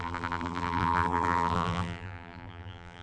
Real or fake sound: fake